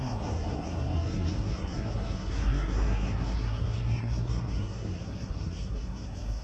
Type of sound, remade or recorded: remade